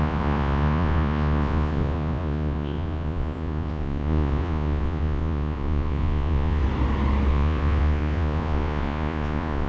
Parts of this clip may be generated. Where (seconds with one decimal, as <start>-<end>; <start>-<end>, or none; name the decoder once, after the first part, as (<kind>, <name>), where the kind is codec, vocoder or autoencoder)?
0.0-6.6 (vocoder, Vocos); 7.3-9.7